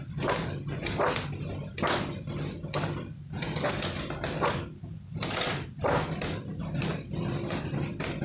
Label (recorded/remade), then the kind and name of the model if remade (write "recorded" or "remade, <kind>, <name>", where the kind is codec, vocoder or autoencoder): recorded